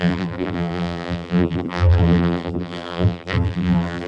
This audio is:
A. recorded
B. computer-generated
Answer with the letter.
B